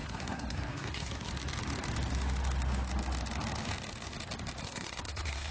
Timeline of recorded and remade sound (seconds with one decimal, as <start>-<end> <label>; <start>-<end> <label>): 0.0-1.3 remade; 1.3-4.6 recorded; 4.6-5.5 remade